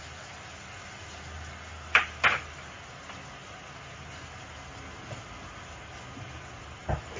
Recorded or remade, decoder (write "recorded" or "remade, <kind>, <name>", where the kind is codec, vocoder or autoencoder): recorded